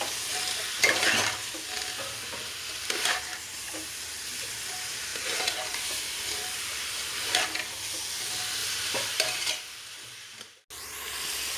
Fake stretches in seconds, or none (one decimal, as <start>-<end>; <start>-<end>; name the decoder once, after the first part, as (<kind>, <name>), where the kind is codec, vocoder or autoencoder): 5.1-7.4 (vocoder, BigVGAN v2); 8.6-9.5